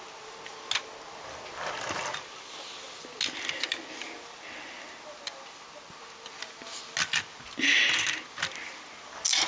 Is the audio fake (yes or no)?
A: no